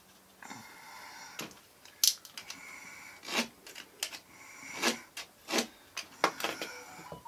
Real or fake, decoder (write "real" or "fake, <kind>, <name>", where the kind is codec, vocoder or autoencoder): real